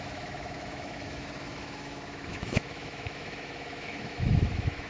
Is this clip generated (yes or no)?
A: yes